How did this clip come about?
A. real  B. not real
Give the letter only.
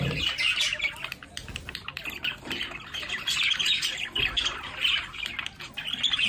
A